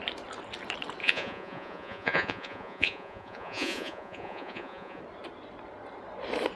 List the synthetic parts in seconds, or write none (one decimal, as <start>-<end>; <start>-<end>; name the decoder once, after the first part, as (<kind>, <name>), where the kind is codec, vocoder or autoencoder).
1.0-5.0 (vocoder, Vocos)